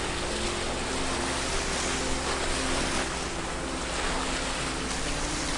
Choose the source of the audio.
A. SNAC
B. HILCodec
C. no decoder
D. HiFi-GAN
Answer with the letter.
C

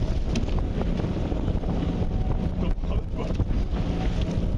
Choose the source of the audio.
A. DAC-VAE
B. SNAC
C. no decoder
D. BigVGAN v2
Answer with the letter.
C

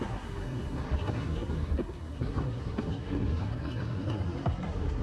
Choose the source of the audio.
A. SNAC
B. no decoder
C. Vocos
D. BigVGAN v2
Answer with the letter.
A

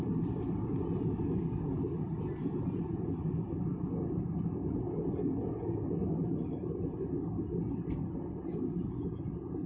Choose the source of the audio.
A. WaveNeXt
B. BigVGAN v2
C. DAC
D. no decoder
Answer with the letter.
D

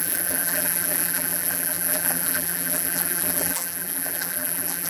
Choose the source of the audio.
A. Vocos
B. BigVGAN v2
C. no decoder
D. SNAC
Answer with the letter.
B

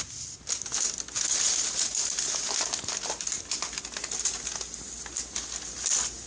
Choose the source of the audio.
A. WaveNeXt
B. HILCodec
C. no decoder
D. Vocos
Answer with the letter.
C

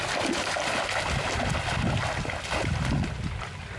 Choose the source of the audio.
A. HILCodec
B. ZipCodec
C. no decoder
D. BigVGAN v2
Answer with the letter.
C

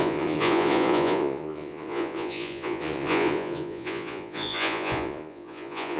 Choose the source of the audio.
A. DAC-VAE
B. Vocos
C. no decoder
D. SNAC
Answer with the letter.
B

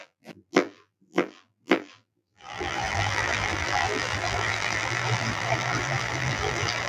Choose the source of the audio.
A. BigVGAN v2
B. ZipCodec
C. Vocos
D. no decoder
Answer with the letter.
A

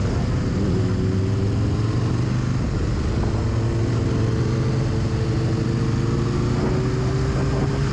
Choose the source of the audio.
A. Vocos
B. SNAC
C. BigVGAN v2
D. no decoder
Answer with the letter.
D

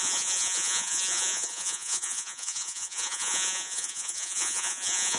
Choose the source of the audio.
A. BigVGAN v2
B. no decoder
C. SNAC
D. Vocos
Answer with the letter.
D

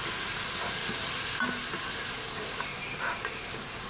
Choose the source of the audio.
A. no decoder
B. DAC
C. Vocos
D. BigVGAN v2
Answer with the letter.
A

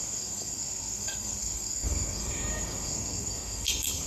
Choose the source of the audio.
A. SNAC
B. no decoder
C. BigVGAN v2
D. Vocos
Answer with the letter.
A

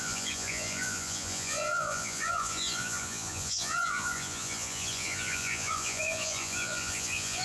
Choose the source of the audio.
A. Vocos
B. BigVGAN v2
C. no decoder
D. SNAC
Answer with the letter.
A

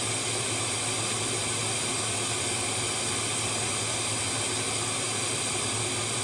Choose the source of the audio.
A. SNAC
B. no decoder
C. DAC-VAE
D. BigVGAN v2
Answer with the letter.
B